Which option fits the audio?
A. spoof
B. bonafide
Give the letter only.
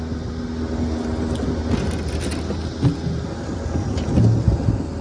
B